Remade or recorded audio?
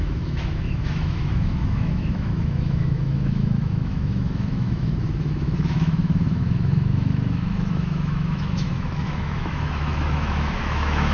remade